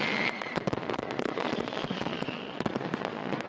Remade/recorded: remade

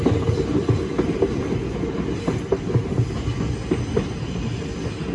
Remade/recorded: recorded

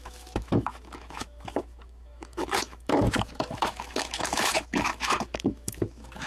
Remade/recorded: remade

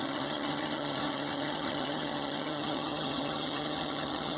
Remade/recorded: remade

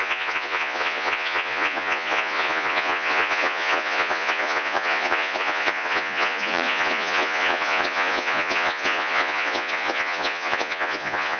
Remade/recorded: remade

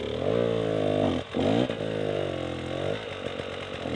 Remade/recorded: recorded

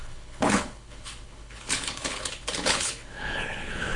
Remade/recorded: remade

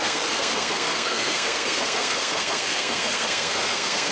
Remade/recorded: remade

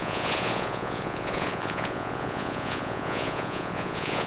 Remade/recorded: remade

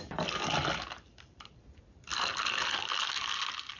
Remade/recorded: recorded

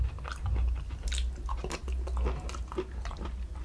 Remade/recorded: recorded